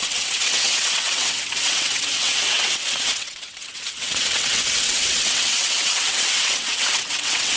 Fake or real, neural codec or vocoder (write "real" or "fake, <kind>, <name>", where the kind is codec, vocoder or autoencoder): fake, vocoder, WaveNeXt